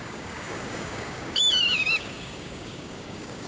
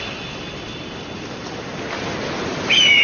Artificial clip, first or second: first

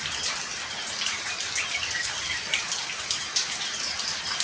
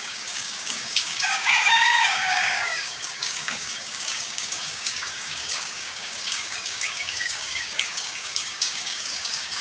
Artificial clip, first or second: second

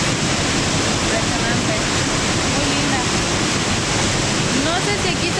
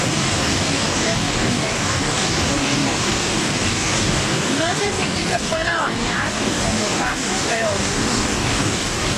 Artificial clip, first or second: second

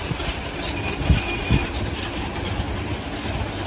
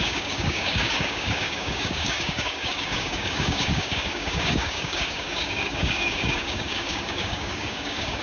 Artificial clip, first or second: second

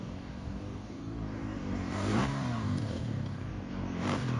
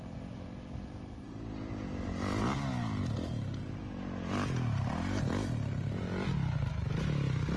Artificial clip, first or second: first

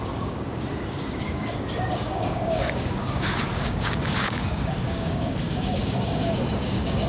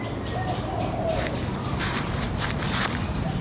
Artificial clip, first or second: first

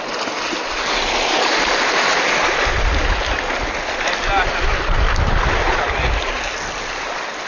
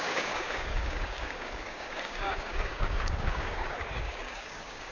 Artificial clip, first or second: second